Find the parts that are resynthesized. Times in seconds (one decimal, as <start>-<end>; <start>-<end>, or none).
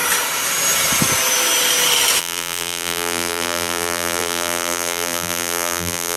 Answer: 2.2-6.2